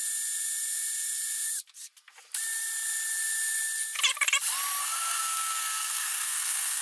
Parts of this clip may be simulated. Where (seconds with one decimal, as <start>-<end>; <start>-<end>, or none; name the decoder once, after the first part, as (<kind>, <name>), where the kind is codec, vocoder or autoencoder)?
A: 4.8-6.8 (codec, SNAC)